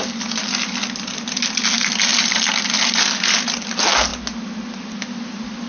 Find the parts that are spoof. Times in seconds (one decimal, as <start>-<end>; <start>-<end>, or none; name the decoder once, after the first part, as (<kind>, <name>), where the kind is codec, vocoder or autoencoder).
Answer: none